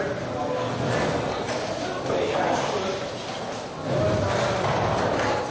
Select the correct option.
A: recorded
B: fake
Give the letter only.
A